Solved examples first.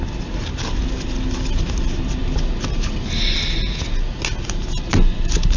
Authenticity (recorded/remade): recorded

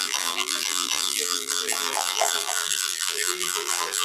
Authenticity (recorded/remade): remade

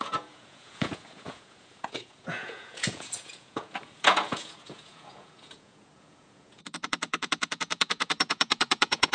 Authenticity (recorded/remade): remade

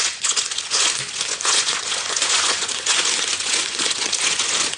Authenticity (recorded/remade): remade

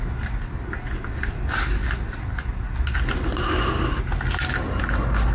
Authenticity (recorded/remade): recorded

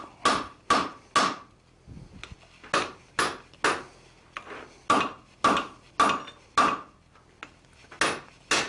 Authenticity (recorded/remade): recorded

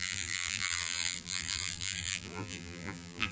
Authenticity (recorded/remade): remade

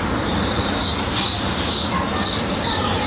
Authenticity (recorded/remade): remade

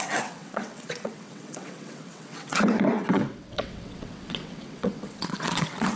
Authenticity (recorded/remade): remade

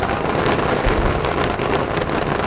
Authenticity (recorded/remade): recorded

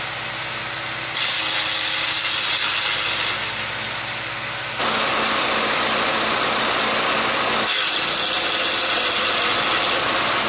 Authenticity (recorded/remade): recorded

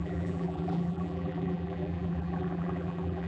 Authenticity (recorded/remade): remade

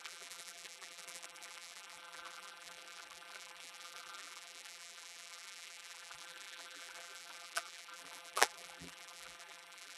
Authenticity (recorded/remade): remade